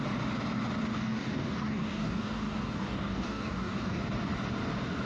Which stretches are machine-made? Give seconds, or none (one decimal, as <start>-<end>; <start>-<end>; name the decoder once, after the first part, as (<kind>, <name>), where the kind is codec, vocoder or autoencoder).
0.9-4.0 (codec, DAC)